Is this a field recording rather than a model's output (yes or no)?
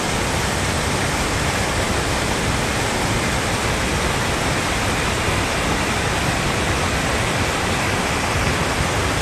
yes